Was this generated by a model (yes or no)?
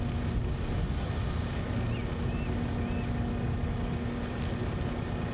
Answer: no